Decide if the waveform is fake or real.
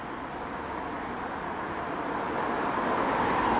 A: real